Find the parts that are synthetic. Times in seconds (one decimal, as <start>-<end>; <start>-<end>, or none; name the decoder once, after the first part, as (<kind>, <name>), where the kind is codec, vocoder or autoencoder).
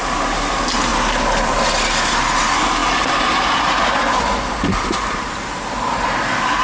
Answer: 2.8-3.7 (vocoder, BigVGAN v2)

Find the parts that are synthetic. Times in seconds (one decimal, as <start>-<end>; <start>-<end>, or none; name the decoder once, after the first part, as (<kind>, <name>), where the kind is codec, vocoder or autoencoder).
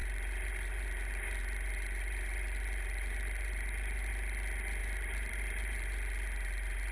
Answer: 0.0-4.1 (vocoder, BigVGAN v2); 4.8-6.9